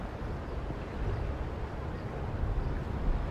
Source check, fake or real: real